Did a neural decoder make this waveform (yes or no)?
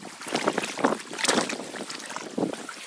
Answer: no